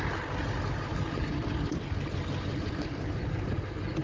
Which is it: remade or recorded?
recorded